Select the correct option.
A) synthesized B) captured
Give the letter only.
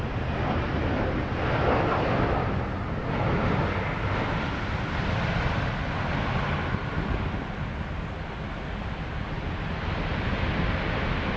B